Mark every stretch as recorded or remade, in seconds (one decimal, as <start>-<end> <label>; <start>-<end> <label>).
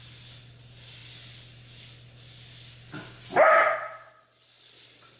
0.0-5.2 recorded